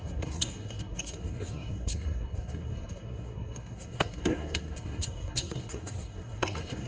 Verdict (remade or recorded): remade